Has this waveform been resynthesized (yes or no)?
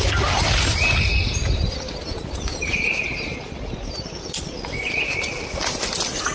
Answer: no